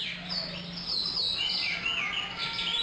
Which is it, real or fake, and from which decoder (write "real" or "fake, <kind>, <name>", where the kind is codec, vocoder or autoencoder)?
real